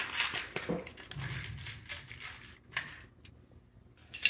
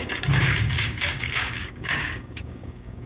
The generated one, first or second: second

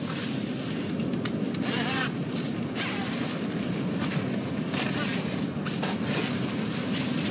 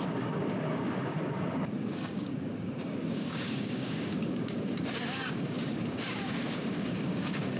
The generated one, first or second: second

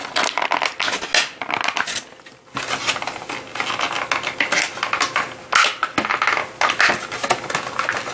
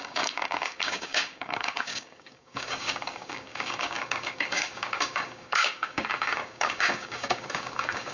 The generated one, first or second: second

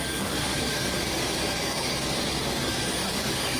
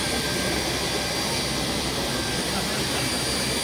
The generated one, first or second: first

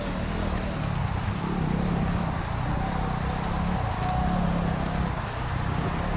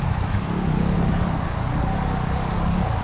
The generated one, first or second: second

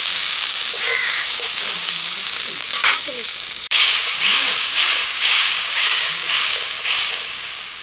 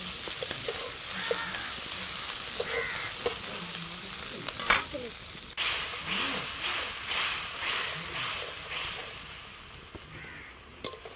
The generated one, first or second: first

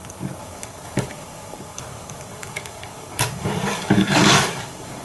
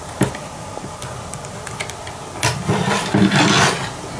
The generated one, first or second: first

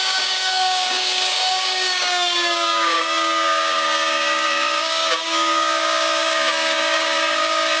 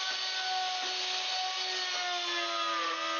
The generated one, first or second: first